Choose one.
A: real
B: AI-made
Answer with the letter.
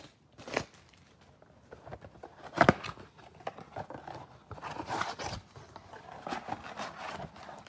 A